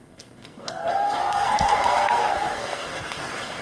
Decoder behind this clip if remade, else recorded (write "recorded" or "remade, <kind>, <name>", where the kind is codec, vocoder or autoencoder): remade, codec, SNAC